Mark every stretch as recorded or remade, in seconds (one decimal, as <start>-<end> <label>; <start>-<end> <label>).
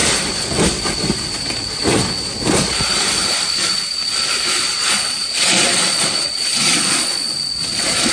0.0-4.9 recorded; 4.9-8.1 remade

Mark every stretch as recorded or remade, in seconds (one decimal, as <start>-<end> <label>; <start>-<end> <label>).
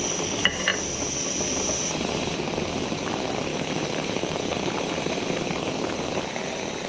0.0-3.5 recorded; 3.5-6.2 remade; 6.2-6.9 recorded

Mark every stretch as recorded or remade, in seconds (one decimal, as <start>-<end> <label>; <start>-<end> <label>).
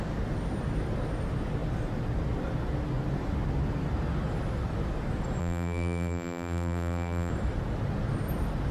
0.0-5.4 recorded; 5.4-7.3 remade; 7.3-8.7 recorded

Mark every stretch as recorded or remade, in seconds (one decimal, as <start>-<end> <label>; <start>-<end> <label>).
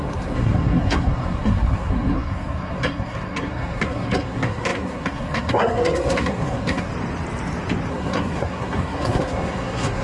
0.0-6.9 remade; 6.9-7.9 recorded; 7.9-10.0 remade